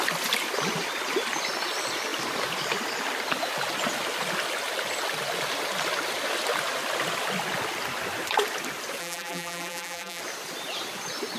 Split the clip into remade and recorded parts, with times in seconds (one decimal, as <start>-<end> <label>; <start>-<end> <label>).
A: 0.0-9.0 recorded; 9.0-10.2 remade; 10.2-11.4 recorded